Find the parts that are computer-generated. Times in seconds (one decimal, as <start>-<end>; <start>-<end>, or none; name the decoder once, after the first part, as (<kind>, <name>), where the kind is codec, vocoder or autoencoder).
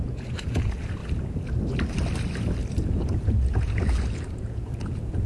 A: 0.0-1.0 (vocoder, Vocos); 2.8-5.3